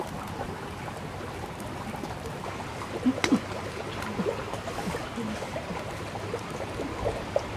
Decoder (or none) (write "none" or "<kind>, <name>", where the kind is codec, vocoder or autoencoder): none